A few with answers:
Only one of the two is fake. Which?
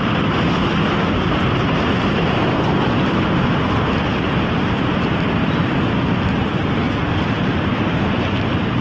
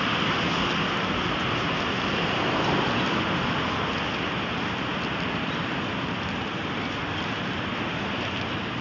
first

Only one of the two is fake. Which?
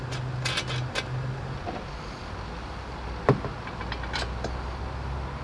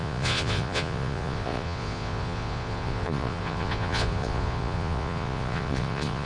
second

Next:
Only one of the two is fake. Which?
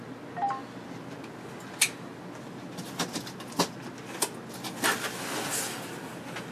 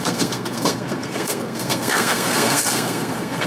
second